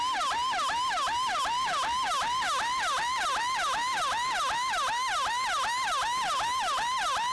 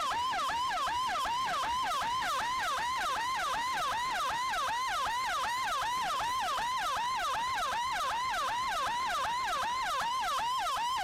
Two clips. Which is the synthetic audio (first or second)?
second